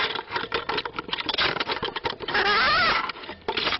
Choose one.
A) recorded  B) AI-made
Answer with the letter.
B